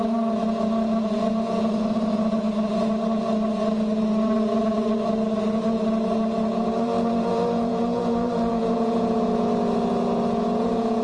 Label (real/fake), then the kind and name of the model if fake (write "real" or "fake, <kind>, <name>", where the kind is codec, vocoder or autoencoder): fake, vocoder, Vocos